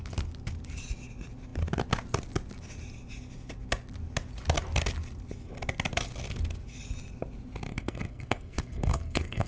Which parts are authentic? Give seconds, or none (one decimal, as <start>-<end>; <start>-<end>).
0.0-7.7